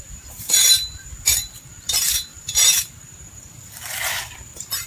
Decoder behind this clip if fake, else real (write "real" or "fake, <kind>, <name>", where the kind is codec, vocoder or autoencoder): fake, vocoder, BigVGAN v2